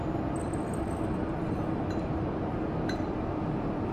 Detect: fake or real fake